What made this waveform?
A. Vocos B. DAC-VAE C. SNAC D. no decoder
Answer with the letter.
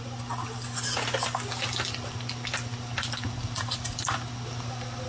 D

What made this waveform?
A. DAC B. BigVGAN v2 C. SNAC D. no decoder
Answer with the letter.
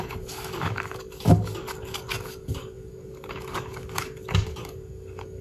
A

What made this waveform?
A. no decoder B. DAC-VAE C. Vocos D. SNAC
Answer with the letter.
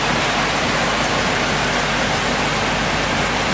A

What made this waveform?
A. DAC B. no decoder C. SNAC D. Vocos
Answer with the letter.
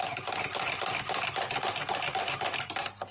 B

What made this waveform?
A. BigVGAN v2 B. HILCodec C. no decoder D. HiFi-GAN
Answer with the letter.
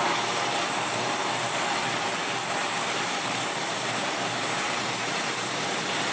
A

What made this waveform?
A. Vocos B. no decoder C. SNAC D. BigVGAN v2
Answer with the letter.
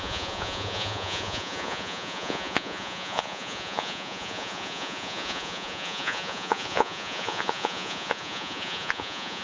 A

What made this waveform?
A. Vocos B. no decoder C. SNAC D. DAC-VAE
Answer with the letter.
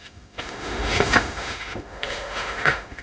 D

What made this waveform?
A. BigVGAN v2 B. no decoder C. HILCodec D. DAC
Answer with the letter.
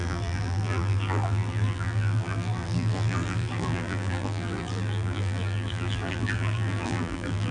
A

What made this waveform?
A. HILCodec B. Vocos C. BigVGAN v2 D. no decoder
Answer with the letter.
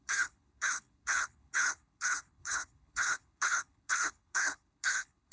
A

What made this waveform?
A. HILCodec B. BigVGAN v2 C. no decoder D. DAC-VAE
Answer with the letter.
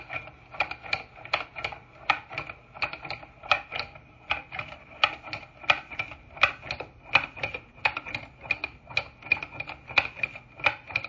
C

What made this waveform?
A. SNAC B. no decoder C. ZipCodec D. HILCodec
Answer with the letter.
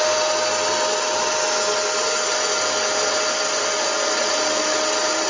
B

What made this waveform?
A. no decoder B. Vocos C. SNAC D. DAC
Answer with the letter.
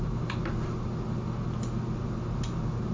A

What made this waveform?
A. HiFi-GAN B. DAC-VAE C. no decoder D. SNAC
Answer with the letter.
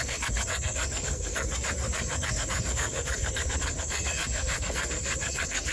D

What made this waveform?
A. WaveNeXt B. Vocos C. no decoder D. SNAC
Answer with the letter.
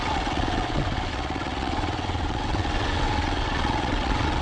A